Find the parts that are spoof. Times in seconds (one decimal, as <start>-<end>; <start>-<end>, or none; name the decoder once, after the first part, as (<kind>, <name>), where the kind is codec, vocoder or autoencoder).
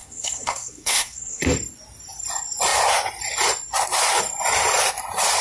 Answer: 0.0-1.4 (codec, SNAC)